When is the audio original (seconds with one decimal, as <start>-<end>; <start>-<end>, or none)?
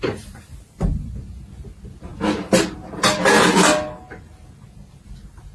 0.0-5.5